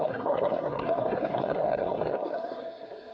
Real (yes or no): no